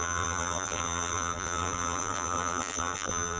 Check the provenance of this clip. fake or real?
fake